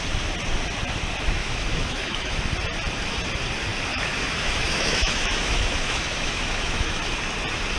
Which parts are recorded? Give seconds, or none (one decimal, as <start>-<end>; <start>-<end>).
0.0-1.4; 2.4-3.9; 7.0-7.8